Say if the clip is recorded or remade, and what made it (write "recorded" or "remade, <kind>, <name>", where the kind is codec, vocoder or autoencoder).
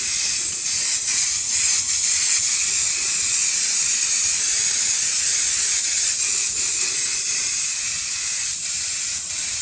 remade, vocoder, Vocos